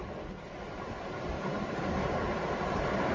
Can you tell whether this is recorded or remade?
recorded